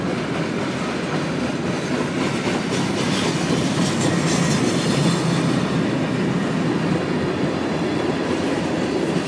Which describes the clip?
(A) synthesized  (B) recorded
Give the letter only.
B